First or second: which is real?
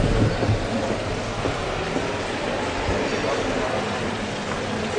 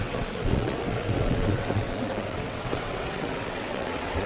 first